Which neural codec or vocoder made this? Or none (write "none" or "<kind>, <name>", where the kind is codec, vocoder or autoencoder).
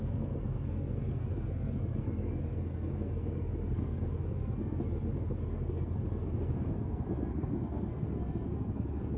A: codec, SNAC